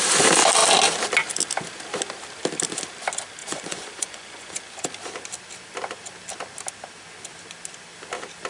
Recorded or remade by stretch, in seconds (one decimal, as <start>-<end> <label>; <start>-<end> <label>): 0.0-3.4 recorded; 3.4-4.5 remade; 4.5-8.5 recorded